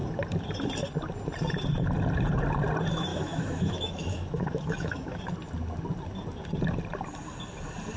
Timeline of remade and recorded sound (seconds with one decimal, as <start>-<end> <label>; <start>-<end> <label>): 0.0-3.1 recorded; 3.1-5.2 remade; 5.2-8.0 recorded